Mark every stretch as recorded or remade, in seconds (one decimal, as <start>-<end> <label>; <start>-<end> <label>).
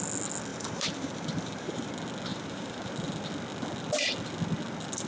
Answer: 0.0-0.5 recorded; 0.5-1.9 remade; 1.9-2.3 recorded; 2.3-2.9 remade; 2.9-5.1 recorded